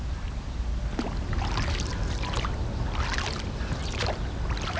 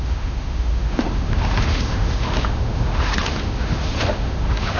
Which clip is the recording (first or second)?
first